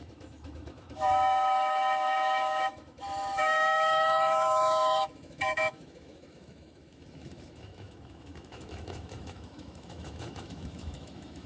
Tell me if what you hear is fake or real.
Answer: fake